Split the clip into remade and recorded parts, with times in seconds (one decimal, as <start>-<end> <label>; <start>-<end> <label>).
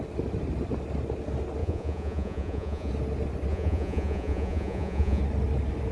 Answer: 0.0-1.6 recorded; 1.6-2.9 remade; 2.9-3.5 recorded; 3.5-5.2 remade; 5.2-5.9 recorded